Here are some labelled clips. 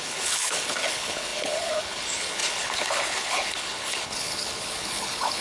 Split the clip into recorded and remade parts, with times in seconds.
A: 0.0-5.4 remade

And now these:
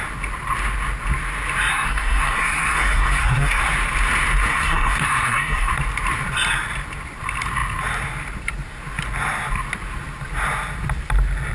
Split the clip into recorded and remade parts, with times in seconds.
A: 0.0-1.7 recorded; 1.7-3.6 remade; 3.6-4.5 recorded; 4.5-5.7 remade; 5.7-11.5 recorded